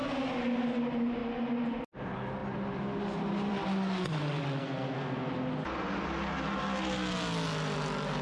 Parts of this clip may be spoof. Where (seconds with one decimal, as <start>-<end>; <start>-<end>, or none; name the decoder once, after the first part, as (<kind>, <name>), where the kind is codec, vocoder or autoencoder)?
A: 4.6-5.3 (codec, SNAC)